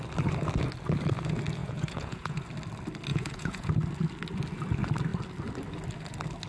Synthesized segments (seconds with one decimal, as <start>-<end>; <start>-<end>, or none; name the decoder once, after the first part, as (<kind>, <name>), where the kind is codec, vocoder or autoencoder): 1.6-2.4 (vocoder, Vocos); 3.1-3.7